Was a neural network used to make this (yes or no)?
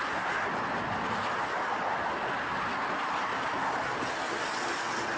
no